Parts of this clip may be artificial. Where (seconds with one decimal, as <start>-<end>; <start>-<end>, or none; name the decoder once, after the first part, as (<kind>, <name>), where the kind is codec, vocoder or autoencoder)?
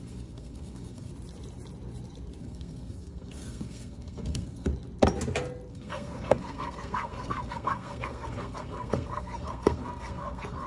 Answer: 0.0-1.1 (codec, SNAC); 2.4-4.7; 5.7-10.7